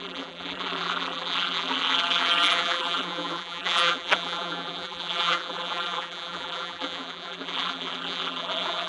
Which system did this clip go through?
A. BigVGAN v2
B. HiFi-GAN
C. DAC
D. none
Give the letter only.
A